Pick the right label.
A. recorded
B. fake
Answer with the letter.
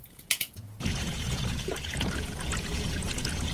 B